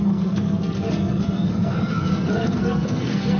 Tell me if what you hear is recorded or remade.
remade